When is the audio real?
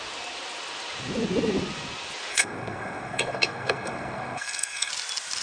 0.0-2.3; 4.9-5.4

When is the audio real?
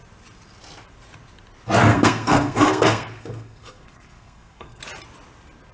0.0-1.9; 4.8-5.7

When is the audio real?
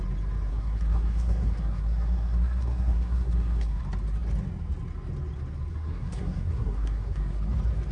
0.0-0.5; 3.8-5.7; 7.4-7.9